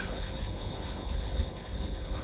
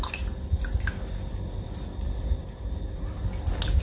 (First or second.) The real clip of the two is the second